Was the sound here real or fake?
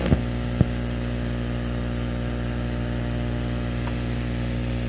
real